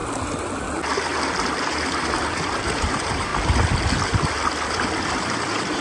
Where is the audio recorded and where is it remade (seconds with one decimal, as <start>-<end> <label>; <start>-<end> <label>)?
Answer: 0.0-2.6 recorded; 2.6-3.3 remade; 3.3-5.2 recorded; 5.2-5.8 remade